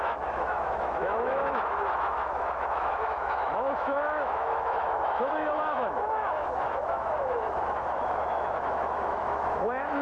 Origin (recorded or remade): remade